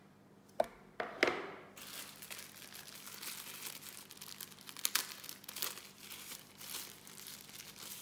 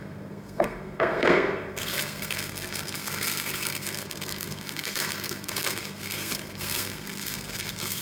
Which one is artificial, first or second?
second